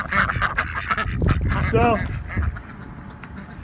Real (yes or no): yes